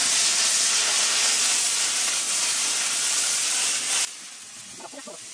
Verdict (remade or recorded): recorded